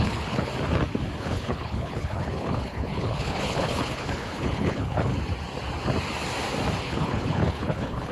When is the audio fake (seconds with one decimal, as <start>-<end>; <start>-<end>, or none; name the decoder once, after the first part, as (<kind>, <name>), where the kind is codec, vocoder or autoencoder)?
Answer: 0.0-0.5 (codec, HILCodec); 1.2-5.1; 6.8-8.1

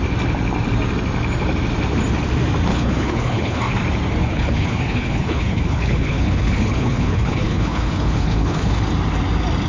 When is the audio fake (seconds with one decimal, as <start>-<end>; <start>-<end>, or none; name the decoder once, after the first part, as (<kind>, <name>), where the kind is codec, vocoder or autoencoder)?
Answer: 2.7-3.6 (codec, HILCodec); 4.2-8.8

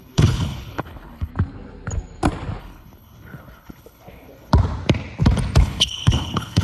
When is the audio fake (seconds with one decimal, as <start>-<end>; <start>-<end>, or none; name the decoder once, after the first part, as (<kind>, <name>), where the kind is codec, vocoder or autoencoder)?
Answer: 0.0-1.3 (codec, HILCodec); 2.6-4.5; 5.6-6.6

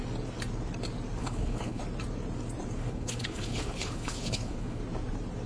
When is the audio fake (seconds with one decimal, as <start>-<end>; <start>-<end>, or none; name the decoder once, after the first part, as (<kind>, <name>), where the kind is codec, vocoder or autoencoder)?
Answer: 1.2-1.8 (codec, HILCodec); 2.8-4.8

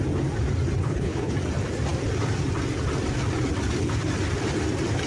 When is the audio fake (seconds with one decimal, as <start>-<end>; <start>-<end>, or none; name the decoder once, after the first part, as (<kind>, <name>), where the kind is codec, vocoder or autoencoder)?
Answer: 0.8-1.3 (codec, HILCodec)

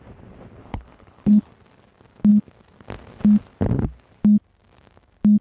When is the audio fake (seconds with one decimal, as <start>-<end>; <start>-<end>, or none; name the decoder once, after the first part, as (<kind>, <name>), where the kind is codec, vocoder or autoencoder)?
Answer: 0.6-1.5 (codec, HILCodec)

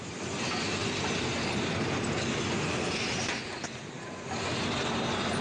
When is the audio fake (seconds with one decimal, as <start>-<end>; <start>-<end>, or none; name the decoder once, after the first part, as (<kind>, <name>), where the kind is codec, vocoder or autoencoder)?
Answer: none